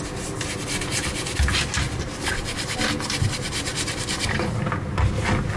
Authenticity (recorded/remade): recorded